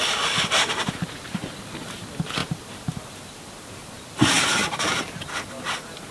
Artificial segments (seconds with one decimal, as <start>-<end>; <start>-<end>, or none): 0.0-6.1